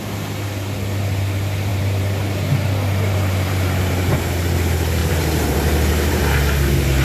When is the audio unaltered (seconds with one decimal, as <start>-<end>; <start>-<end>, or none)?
0.0-1.7; 4.1-5.0; 6.2-7.0